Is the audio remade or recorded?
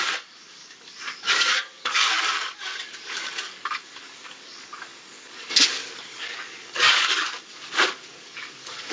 remade